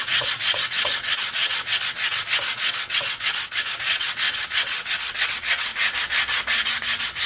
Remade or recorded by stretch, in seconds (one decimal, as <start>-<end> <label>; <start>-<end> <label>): 0.0-5.7 remade; 5.7-7.3 recorded